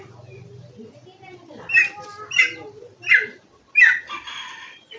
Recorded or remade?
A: recorded